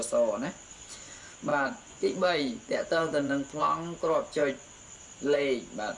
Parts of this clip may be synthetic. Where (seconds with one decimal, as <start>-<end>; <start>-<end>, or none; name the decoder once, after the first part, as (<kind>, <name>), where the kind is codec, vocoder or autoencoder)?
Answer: 1.5-3.6 (vocoder, Vocos)